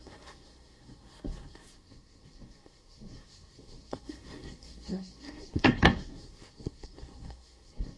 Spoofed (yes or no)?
yes